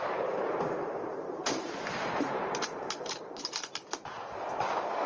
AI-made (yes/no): yes